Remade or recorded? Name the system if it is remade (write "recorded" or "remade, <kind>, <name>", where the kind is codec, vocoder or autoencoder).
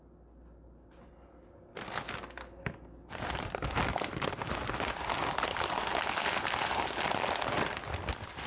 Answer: recorded